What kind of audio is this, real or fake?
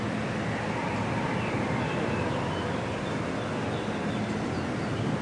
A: real